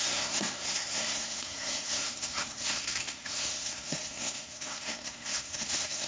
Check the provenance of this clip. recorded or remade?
remade